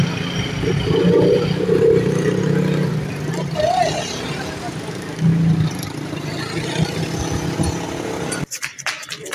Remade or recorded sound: recorded